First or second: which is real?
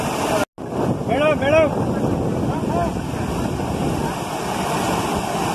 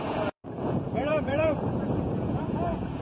first